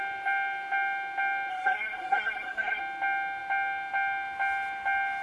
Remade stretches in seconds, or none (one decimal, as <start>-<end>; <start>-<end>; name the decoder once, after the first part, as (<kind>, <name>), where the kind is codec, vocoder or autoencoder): 1.5-2.8 (codec, SNAC)